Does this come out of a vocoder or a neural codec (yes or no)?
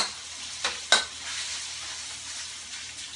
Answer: no